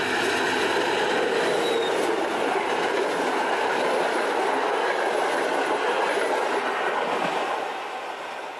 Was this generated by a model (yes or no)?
no